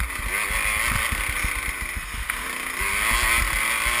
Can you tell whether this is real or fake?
real